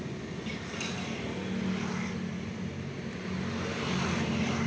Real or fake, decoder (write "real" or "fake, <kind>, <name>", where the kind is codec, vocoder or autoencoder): real